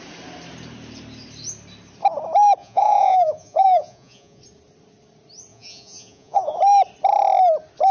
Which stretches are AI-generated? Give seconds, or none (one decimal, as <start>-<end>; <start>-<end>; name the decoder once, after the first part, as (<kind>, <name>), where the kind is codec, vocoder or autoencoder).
2.6-4.4 (vocoder, Vocos); 5.5-6.6